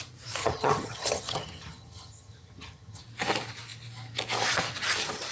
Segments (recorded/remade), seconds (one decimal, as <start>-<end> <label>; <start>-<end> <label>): 0.0-0.4 recorded; 0.4-3.0 remade; 3.0-5.3 recorded